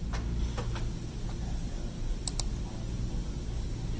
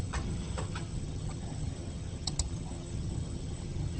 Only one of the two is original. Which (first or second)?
first